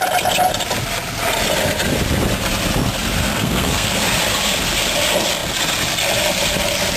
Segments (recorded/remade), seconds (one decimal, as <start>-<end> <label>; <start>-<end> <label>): 0.0-3.2 recorded; 3.2-4.2 remade; 4.2-7.0 recorded